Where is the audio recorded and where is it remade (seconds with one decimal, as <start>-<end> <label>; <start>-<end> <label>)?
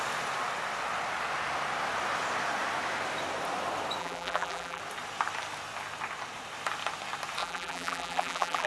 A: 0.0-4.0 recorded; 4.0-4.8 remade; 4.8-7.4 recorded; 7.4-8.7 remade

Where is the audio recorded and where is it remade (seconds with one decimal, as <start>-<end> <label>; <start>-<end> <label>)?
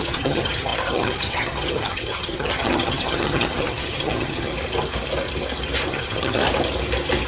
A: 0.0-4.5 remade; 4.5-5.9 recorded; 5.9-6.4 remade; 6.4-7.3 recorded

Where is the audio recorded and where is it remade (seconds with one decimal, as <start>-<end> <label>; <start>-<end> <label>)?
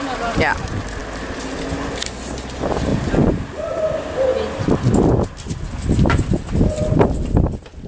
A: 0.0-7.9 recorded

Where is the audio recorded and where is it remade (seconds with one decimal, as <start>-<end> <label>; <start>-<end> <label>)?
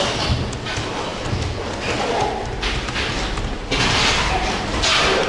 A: 0.0-5.3 recorded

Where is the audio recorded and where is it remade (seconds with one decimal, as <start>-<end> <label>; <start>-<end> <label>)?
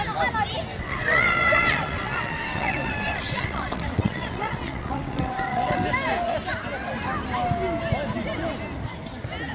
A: 0.0-0.7 recorded; 0.7-5.8 remade; 5.8-9.5 recorded